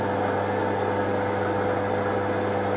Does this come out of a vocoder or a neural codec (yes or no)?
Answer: no